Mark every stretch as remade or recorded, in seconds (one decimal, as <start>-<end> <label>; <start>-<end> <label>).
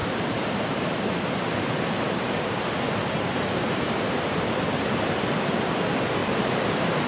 0.0-4.3 remade; 4.3-6.2 recorded; 6.2-7.1 remade